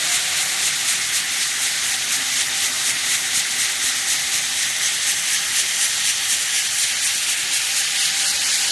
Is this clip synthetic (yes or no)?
no